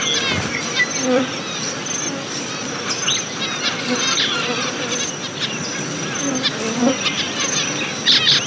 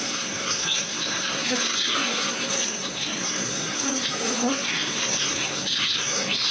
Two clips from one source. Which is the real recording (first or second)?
first